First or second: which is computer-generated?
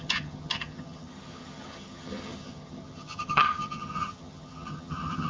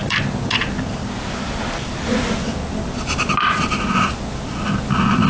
first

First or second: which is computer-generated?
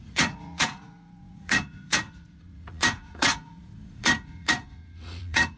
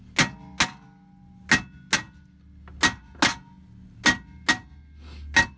first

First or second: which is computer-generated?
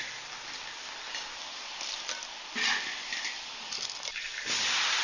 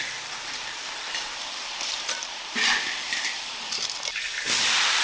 second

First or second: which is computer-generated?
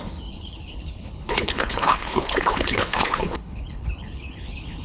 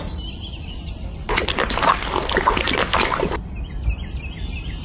first